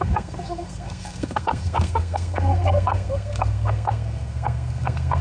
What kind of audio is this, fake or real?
fake